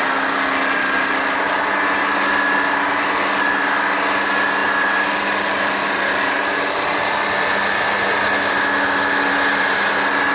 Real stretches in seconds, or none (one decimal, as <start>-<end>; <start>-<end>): 0.0-10.3